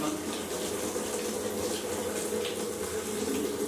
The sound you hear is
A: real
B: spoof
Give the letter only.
A